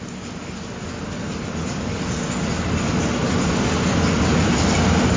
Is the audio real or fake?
real